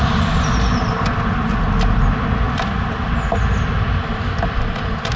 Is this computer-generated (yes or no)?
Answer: no